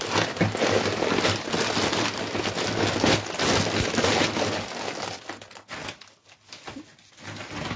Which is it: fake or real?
real